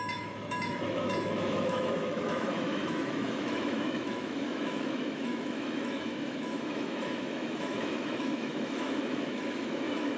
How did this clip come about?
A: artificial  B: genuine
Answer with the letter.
A